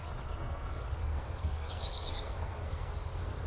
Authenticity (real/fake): fake